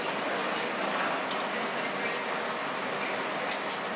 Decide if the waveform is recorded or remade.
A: recorded